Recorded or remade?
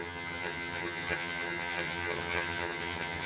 remade